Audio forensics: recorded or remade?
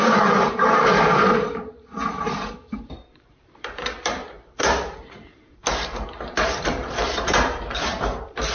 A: remade